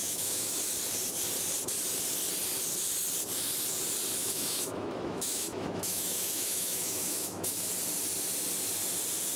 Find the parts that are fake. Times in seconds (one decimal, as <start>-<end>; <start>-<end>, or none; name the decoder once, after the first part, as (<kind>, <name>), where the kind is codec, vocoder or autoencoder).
0.0-0.6 (autoencoder, DAC-VAE); 4.2-7.7